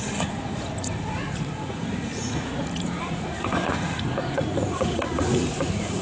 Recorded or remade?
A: remade